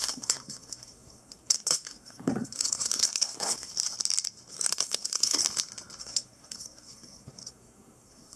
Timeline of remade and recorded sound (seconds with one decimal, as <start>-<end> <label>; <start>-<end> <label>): 0.0-3.7 remade; 3.7-4.5 recorded; 4.5-5.4 remade; 5.4-6.0 recorded; 6.0-8.4 remade